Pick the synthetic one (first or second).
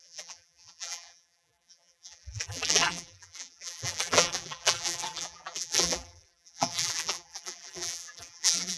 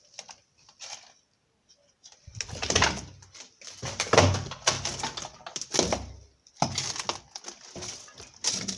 first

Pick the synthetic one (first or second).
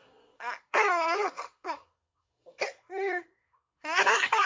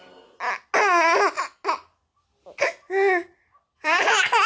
first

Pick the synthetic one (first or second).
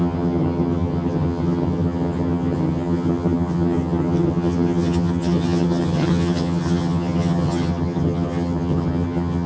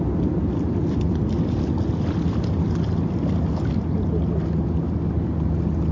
first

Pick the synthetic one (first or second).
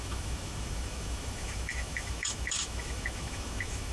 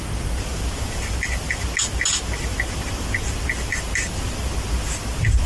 first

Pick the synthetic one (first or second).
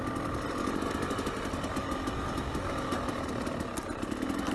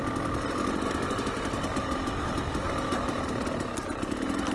second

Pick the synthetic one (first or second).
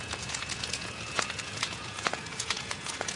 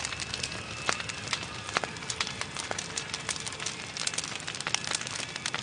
first